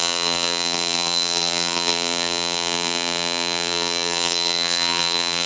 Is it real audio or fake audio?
fake